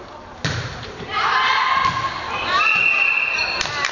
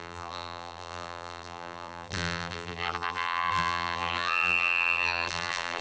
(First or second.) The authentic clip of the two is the first